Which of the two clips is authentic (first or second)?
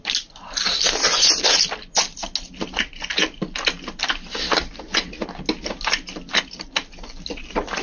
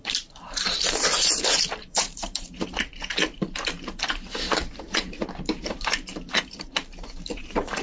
first